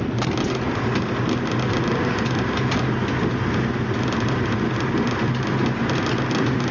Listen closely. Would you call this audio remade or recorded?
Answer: recorded